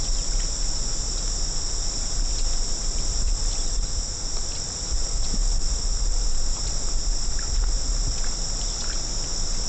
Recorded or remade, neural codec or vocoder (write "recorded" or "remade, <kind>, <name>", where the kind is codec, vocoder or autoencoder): recorded